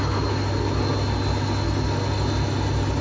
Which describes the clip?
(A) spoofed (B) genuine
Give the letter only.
B